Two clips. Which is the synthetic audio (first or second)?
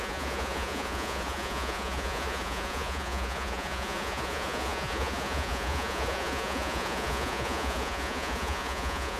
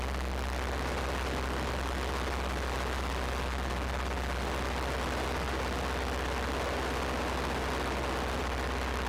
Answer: first